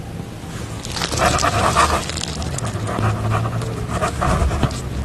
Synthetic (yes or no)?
no